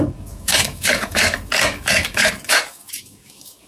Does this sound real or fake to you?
fake